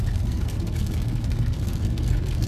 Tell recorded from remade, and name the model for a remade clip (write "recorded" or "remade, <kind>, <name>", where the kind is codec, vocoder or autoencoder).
remade, codec, SNAC